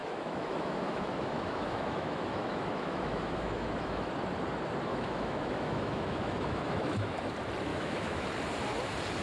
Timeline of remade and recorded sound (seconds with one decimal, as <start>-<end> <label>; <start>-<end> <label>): 0.0-4.1 remade; 4.1-4.9 recorded; 4.9-7.2 remade; 7.2-7.7 recorded; 7.7-8.3 remade; 8.3-9.2 recorded